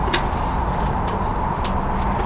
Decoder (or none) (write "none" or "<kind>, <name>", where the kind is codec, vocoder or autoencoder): none